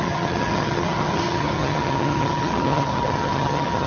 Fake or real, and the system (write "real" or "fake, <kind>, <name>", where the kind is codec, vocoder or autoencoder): fake, vocoder, HiFi-GAN